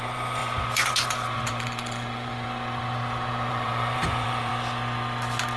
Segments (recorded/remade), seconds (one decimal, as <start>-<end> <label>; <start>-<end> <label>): 0.0-2.3 remade; 2.3-3.5 recorded; 3.5-4.5 remade; 4.5-5.6 recorded

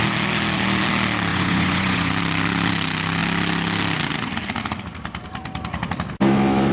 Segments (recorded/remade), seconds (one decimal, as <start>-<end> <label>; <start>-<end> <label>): 0.0-1.3 recorded; 1.3-2.1 remade; 2.1-6.7 recorded

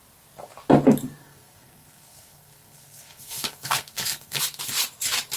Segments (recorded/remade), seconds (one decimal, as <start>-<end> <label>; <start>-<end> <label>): 0.0-1.2 recorded; 1.2-4.4 remade; 4.4-5.4 recorded

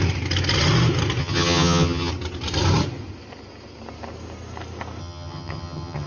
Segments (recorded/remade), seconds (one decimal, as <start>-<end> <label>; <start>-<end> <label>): 0.0-1.2 recorded; 1.2-2.1 remade; 2.1-5.0 recorded; 5.0-6.1 remade

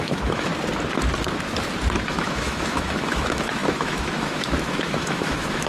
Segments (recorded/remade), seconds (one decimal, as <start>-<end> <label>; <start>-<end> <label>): 0.0-0.5 remade; 0.5-2.1 recorded; 2.1-5.7 remade

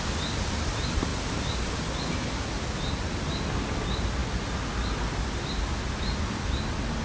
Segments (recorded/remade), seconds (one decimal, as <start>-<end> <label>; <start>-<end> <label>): 0.0-7.0 recorded

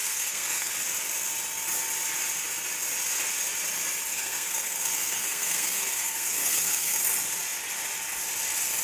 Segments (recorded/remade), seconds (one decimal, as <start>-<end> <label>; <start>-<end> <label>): 0.0-0.7 remade; 0.7-4.1 recorded; 4.1-7.0 remade; 7.0-8.8 recorded